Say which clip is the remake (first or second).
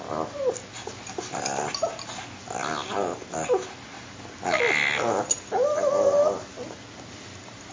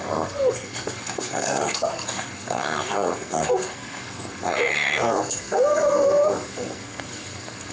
second